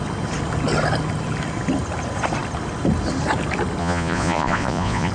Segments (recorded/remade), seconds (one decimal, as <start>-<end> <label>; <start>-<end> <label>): 0.0-3.8 recorded; 3.8-5.1 remade